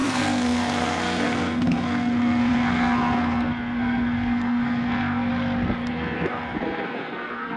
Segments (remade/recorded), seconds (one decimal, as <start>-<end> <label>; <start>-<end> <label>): 0.0-5.3 remade; 5.3-5.9 recorded; 5.9-7.6 remade

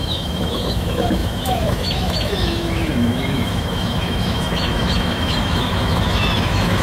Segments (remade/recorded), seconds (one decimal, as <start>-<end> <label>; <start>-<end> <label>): 0.0-6.8 remade

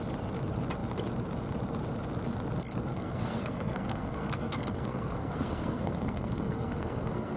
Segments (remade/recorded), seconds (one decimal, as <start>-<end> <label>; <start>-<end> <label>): 0.0-2.9 recorded; 2.9-7.4 remade

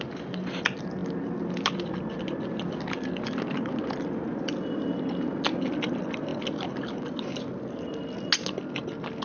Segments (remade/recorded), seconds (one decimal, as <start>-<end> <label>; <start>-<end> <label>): 0.0-9.2 recorded

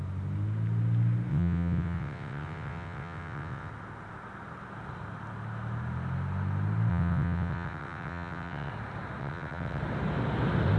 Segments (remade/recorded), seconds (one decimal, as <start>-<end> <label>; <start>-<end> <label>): 0.0-1.3 recorded; 1.3-3.7 remade; 3.7-6.9 recorded; 6.9-8.7 remade; 8.7-9.2 recorded; 9.2-9.8 remade; 9.8-10.8 recorded